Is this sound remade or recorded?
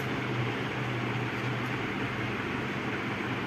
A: recorded